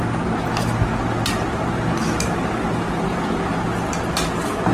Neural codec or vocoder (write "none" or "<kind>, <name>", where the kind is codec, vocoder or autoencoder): none